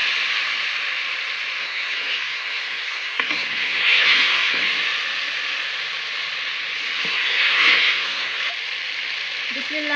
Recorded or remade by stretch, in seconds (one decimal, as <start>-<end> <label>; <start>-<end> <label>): 0.0-1.6 recorded; 1.6-4.6 remade; 4.6-7.1 recorded; 7.1-8.4 remade; 8.4-10.0 recorded